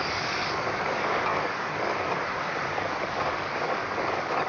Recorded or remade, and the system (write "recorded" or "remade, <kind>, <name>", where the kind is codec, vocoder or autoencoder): remade, codec, DAC